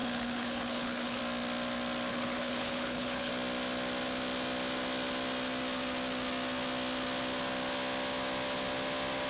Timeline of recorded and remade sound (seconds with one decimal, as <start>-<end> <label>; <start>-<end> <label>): 0.0-1.2 remade; 1.2-2.1 recorded; 2.1-3.3 remade; 3.3-9.3 recorded